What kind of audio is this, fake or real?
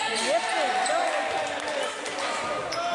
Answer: real